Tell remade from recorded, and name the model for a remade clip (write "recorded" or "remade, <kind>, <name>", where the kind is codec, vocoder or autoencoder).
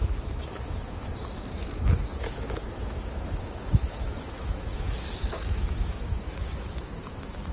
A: remade, autoencoder, DAC-VAE